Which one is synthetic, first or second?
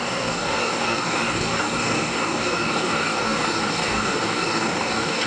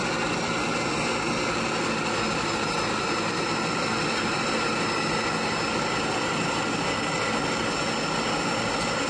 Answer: first